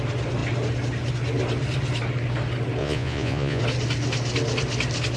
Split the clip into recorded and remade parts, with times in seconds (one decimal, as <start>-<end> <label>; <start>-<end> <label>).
0.0-2.8 recorded; 2.8-3.6 remade; 3.6-5.2 recorded